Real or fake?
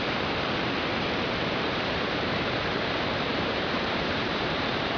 fake